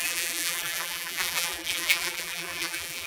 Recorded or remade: remade